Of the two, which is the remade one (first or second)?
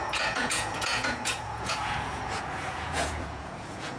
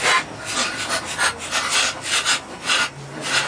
first